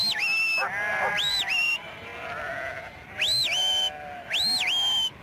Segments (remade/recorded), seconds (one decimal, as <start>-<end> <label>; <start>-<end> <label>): 0.0-1.0 recorded; 1.0-2.1 remade; 2.1-5.2 recorded